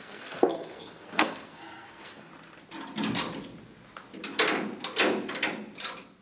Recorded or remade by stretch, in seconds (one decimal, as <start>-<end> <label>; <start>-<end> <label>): 0.0-2.3 remade; 2.3-6.2 recorded